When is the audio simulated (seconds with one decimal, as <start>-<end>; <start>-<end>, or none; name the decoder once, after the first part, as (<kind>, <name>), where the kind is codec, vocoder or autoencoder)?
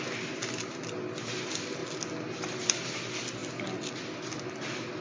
none